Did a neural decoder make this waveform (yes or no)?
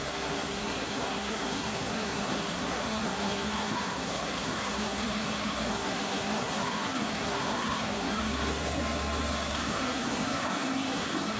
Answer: yes